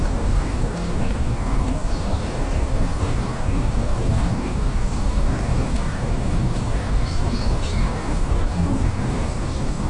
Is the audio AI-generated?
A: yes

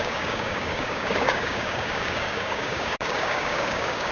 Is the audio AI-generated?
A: yes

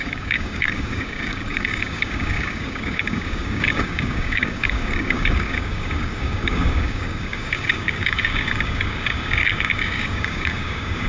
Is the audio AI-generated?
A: yes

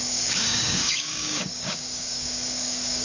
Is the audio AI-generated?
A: yes